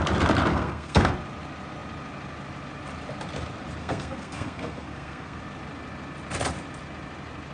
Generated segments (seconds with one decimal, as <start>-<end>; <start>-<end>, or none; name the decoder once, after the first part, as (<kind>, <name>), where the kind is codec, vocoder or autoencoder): 0.5-1.1 (codec, SNAC); 3.8-5.4